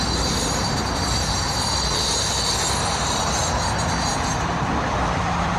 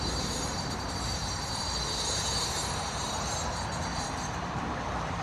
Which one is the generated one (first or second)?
second